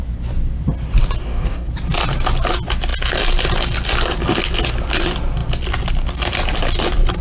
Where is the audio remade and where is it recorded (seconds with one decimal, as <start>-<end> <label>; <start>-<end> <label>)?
0.0-1.2 recorded; 1.2-1.7 remade; 1.7-7.2 recorded